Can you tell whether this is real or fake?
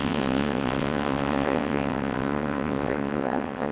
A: fake